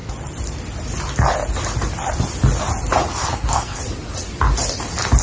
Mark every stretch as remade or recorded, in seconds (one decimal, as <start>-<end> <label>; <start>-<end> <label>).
0.0-3.3 recorded; 3.3-3.8 remade; 3.8-5.2 recorded